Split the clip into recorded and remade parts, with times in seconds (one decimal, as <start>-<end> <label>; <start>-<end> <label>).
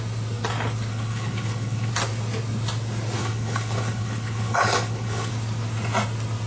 0.0-0.9 recorded; 0.9-1.9 remade; 1.9-3.2 recorded; 3.2-5.3 remade; 5.3-6.5 recorded